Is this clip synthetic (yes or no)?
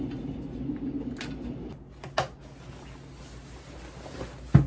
no